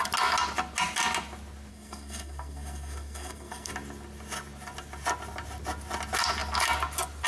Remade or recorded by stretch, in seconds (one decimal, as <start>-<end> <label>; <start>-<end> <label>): 0.0-1.7 recorded; 1.7-3.7 remade; 3.7-7.3 recorded